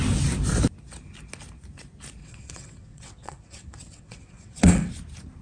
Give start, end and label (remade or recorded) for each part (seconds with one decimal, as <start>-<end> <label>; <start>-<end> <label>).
0.0-2.2 recorded; 2.2-4.9 remade; 4.9-5.4 recorded